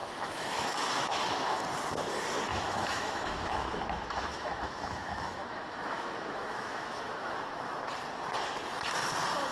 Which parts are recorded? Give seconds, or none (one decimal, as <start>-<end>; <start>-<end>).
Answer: 1.6-2.5; 7.8-9.5